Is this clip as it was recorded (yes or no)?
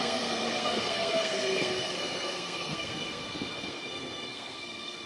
no